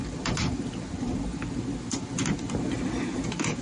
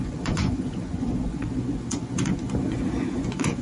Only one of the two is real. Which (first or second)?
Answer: first